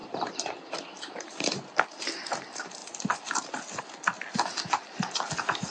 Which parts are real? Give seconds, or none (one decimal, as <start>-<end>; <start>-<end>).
2.1-5.7